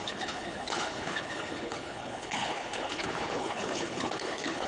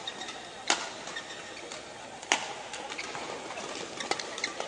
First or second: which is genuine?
second